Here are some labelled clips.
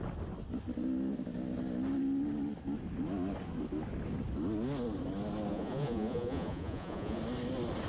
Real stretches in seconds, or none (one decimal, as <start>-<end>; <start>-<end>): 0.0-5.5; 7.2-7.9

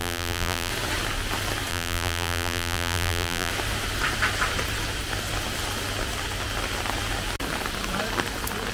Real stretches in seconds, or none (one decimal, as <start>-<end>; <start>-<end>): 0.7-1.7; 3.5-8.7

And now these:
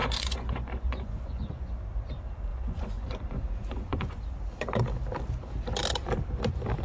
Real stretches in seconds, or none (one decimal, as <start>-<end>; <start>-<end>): 1.7-2.5; 4.2-6.8